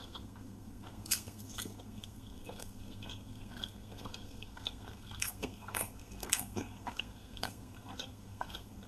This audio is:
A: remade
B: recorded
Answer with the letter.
A